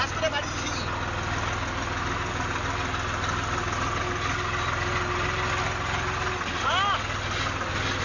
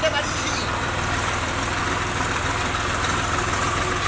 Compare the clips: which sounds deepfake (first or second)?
second